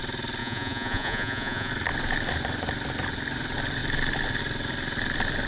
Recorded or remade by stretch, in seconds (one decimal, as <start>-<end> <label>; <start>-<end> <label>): 0.0-0.4 recorded; 0.4-1.7 remade; 1.7-5.5 recorded